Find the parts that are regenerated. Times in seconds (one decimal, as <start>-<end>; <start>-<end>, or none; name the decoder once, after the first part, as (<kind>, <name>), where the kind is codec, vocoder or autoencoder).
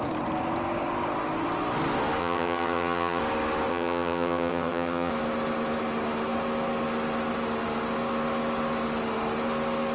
2.2-3.2 (vocoder, HiFi-GAN); 3.7-5.1